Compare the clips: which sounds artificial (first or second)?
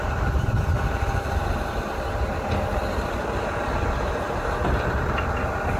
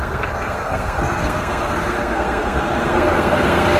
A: second